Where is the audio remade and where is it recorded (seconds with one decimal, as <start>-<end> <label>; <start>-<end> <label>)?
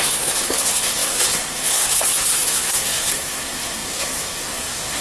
0.0-5.0 remade